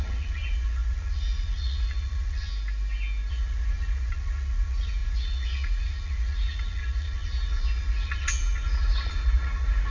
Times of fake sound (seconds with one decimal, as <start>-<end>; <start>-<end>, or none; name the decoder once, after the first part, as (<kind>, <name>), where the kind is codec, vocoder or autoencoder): 0.0-2.5 (vocoder, Vocos); 3.3-9.9